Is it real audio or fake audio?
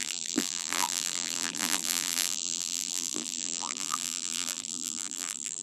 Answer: fake